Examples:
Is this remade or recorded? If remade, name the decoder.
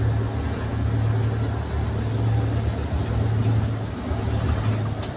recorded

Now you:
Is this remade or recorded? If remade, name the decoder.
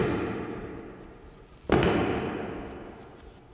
recorded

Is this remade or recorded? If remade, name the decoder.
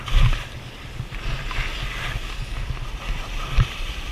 recorded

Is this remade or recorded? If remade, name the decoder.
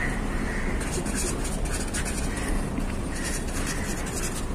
recorded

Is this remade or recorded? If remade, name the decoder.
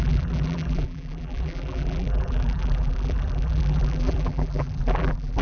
remade, vocoder, BigVGAN v2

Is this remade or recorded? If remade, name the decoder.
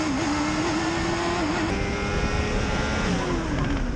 recorded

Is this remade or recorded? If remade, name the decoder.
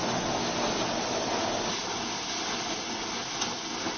recorded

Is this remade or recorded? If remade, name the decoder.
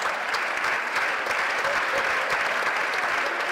recorded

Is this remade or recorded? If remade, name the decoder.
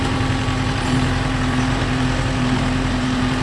remade, vocoder, BigVGAN v2